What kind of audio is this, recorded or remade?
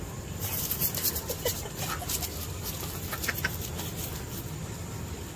recorded